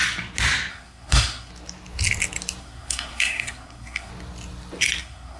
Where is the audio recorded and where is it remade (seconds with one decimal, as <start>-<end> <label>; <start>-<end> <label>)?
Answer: 0.0-0.7 recorded; 0.7-1.5 remade; 1.5-2.6 recorded; 2.6-4.1 remade; 4.1-5.0 recorded; 5.0-5.4 remade